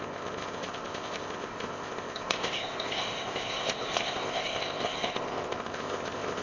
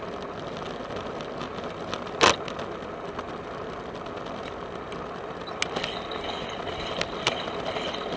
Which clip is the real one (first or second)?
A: second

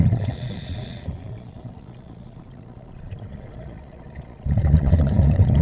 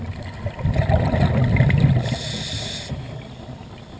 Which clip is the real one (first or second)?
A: second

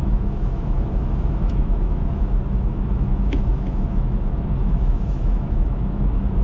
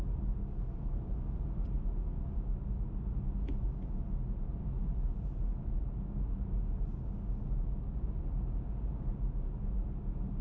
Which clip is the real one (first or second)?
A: second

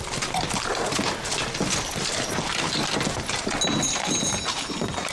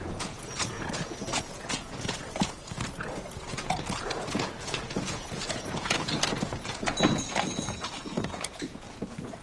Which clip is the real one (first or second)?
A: first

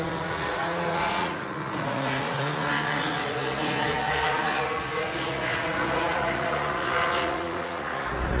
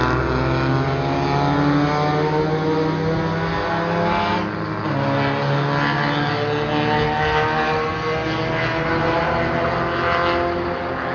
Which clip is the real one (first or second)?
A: second